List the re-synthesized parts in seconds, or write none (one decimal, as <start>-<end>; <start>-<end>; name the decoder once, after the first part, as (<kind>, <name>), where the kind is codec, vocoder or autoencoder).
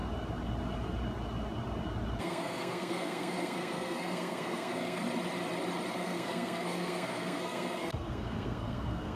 2.2-5.0 (codec, SNAC); 5.9-9.2